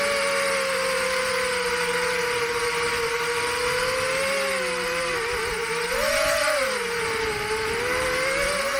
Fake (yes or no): no